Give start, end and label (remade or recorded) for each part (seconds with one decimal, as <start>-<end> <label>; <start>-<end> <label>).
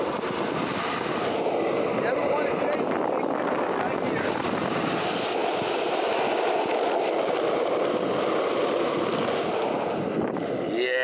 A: 0.0-11.0 recorded